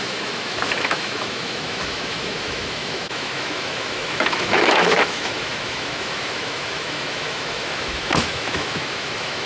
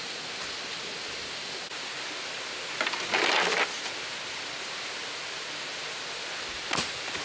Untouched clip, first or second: second